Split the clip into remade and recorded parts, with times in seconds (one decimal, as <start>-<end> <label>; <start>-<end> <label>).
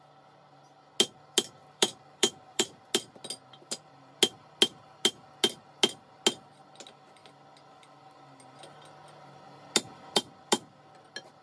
0.0-1.6 recorded; 1.6-2.9 remade; 2.9-11.4 recorded